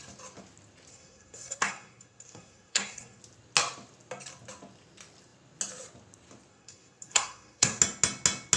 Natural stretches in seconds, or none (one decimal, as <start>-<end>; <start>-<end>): 0.0-0.9; 3.2-6.5; 7.8-8.6